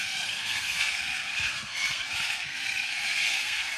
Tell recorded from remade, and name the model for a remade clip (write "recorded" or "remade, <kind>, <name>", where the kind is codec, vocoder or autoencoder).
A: remade, codec, SNAC